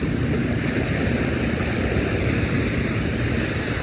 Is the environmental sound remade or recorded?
recorded